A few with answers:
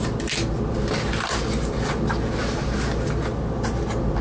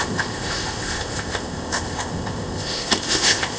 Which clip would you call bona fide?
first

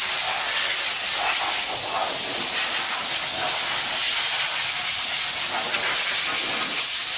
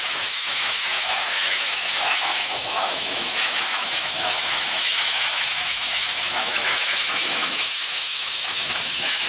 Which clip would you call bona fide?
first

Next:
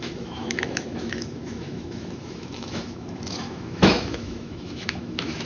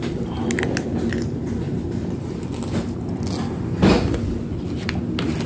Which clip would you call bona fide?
second